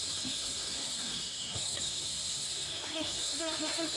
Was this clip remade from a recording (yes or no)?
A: yes